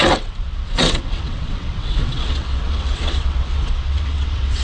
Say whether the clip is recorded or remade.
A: remade